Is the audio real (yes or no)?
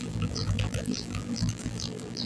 no